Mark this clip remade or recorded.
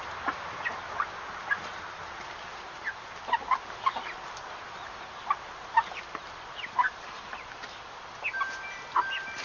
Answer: recorded